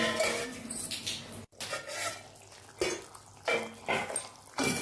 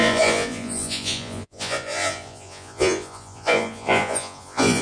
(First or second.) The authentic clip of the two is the first